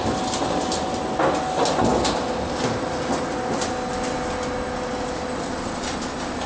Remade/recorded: recorded